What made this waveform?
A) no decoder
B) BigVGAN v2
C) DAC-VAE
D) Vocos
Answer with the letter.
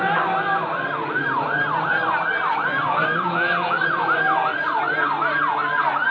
A